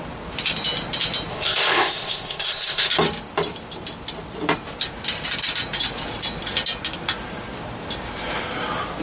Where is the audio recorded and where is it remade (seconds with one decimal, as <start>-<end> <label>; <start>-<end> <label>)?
0.0-1.3 recorded; 1.3-2.9 remade; 2.9-9.0 recorded